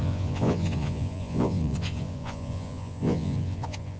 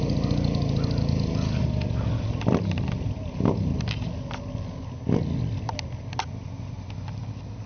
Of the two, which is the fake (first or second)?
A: first